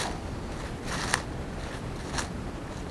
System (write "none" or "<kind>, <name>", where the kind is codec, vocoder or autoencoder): none